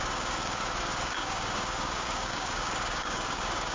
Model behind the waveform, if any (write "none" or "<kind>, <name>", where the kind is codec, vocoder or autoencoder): codec, DAC